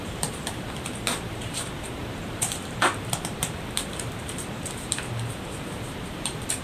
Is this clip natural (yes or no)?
no